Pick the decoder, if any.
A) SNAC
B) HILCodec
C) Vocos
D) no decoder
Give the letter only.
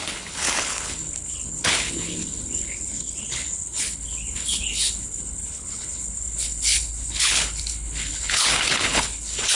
B